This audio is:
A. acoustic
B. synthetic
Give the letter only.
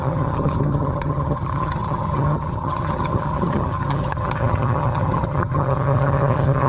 B